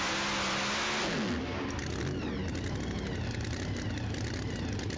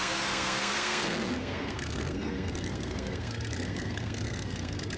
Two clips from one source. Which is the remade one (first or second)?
second